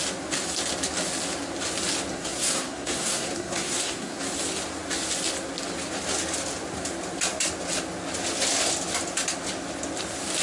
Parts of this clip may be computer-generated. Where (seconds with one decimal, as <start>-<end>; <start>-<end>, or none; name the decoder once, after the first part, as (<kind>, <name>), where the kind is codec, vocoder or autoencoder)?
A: 2.1-4.2 (codec, SNAC)